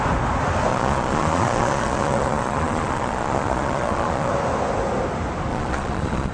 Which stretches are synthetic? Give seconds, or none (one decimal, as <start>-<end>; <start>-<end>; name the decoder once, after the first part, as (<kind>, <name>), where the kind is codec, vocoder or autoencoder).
0.7-4.3 (vocoder, Vocos); 5.5-6.3